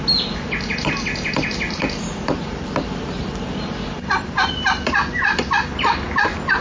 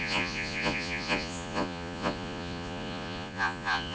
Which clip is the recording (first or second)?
first